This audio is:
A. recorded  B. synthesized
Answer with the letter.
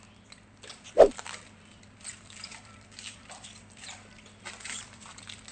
B